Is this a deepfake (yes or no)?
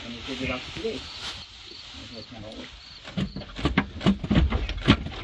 no